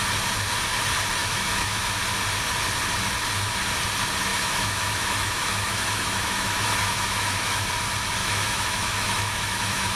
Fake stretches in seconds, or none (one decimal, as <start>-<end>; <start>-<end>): 1.2-1.9; 4.3-7.7; 8.2-10.0

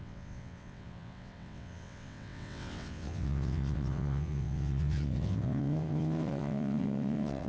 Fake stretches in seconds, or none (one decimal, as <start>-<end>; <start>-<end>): 0.0-7.5

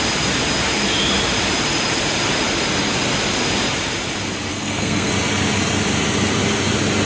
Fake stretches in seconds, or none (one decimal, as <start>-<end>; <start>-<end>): 4.5-5.1